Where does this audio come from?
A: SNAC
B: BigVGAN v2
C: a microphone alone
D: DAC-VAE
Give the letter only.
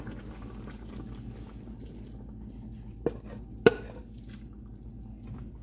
C